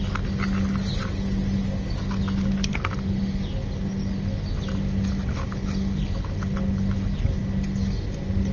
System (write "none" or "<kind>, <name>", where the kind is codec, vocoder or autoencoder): none